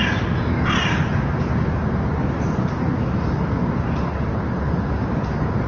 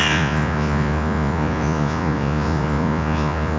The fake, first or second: second